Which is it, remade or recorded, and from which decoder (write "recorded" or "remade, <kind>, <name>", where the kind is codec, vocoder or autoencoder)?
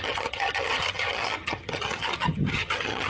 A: remade, vocoder, HiFi-GAN